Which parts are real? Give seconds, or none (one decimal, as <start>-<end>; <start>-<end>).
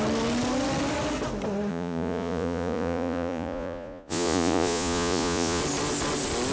0.0-1.7; 5.6-6.5